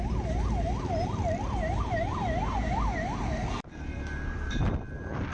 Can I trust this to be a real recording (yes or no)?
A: yes